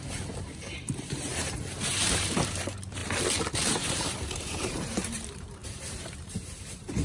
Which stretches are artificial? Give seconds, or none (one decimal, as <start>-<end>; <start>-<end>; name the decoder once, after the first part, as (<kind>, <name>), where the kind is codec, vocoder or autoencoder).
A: 0.0-3.0 (vocoder, BigVGAN v2); 3.7-7.0